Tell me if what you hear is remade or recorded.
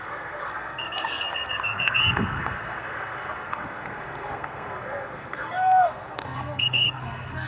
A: remade